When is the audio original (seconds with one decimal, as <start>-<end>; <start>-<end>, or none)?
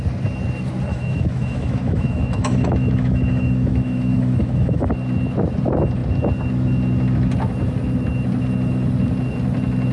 0.0-0.9; 4.9-9.9